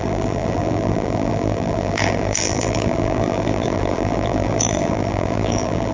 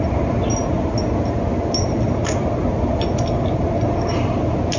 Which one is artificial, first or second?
first